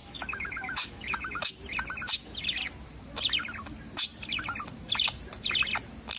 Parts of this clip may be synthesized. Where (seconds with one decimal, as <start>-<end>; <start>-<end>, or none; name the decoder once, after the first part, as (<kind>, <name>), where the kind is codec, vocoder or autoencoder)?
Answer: 0.0-1.5 (autoencoder, DAC-VAE)